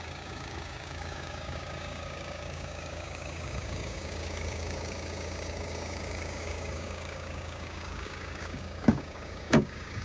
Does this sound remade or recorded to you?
remade